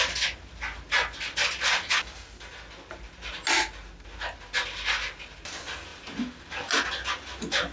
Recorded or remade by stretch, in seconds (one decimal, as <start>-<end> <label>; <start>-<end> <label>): 0.0-7.7 recorded